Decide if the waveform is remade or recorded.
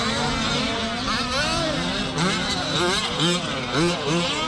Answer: recorded